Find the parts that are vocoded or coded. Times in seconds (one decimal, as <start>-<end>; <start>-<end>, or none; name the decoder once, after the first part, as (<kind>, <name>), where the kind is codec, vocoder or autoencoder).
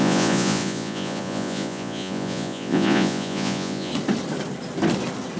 0.0-3.9 (vocoder, Vocos)